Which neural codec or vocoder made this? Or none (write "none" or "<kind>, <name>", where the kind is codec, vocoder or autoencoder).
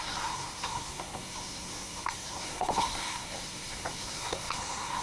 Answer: codec, SNAC